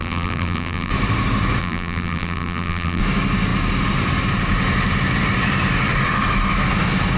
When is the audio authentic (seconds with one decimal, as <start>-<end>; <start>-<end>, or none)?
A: 0.9-1.6; 3.0-7.2